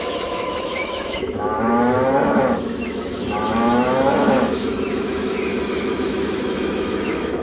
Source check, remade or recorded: remade